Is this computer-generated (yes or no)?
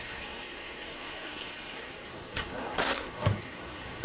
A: yes